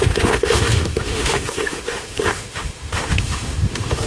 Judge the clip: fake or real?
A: fake